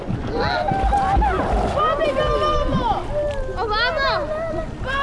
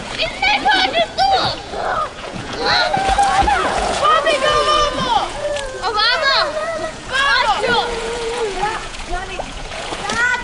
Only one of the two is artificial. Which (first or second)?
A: second